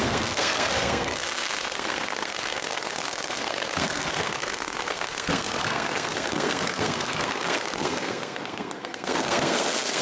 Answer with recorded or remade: remade